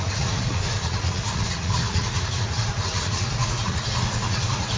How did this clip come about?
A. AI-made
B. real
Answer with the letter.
A